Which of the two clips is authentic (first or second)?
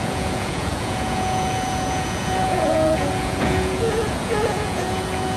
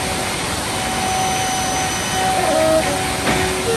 second